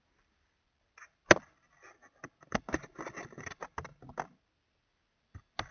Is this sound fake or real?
real